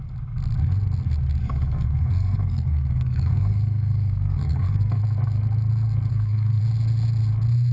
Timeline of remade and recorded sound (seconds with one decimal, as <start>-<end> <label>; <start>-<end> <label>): 0.0-1.4 recorded; 1.4-5.0 remade; 5.0-6.1 recorded; 6.1-6.6 remade; 6.6-7.7 recorded